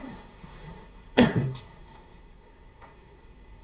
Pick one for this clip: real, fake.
fake